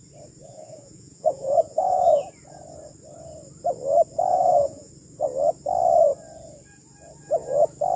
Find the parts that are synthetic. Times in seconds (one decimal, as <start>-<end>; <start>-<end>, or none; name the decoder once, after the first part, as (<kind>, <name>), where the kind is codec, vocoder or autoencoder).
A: 0.4-2.2 (vocoder, Vocos); 4.3-4.9

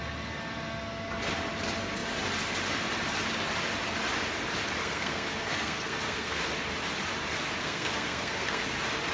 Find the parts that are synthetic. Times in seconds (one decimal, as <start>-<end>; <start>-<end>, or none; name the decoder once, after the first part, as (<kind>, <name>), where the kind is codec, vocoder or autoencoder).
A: 4.8-6.4 (codec, SNAC); 7.6-8.6

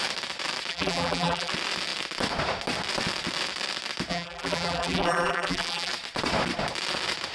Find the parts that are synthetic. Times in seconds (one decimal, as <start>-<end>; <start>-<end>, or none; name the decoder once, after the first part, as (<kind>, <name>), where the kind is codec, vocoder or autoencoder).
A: 0.7-1.5 (vocoder, BigVGAN v2); 4.1-5.9

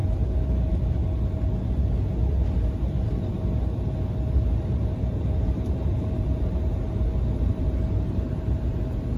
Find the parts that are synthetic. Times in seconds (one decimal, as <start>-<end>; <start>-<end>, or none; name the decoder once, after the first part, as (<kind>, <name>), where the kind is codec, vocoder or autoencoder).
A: 0.6-1.0 (vocoder, BigVGAN v2); 4.6-9.2